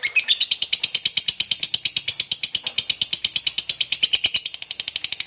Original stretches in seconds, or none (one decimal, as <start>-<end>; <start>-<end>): 0.0-5.3